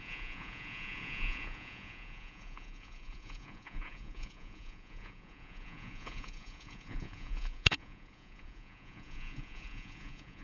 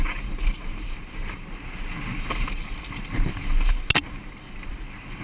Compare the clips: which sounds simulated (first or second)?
first